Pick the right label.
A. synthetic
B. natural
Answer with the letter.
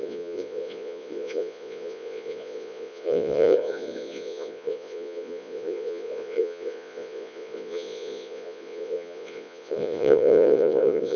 A